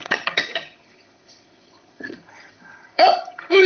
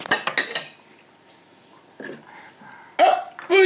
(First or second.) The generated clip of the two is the first